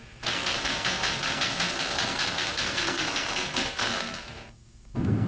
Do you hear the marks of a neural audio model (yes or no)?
yes